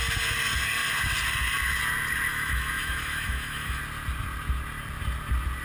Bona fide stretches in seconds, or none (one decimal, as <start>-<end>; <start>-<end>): 0.0-2.3; 3.8-5.6